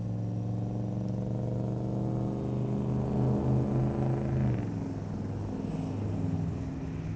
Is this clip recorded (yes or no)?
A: yes